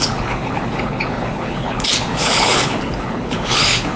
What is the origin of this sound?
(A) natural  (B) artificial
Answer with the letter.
B